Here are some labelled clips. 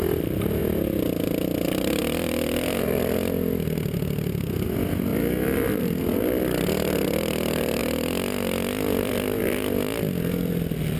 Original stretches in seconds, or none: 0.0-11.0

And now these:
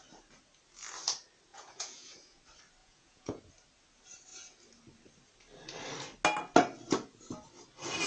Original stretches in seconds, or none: 0.0-1.5; 2.4-2.8; 3.4-8.1

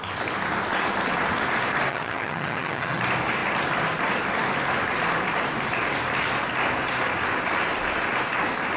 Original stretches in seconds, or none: 0.0-1.9; 3.0-8.8

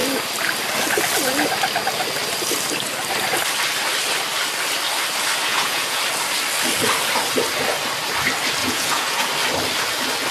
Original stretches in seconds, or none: 0.0-5.5; 6.0-8.6; 9.3-10.3

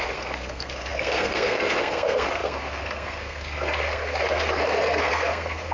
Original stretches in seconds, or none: none

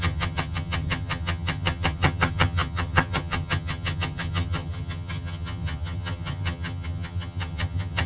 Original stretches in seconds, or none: none

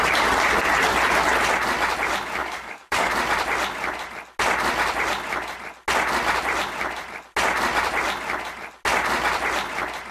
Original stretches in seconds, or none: 0.0-2.4; 3.1-10.1